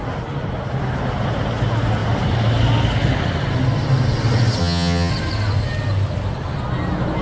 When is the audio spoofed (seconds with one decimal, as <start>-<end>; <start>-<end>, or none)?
4.6-5.1